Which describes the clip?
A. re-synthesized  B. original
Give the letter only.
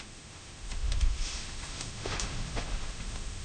A